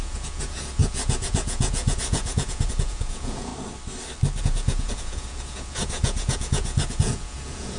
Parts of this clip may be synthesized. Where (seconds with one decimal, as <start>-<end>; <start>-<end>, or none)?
0.0-3.5; 4.4-7.8